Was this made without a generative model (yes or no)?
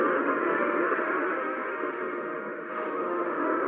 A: no